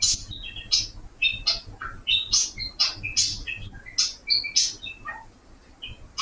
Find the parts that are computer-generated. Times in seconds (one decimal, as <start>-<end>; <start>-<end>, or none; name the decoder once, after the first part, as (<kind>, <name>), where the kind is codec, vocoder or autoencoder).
none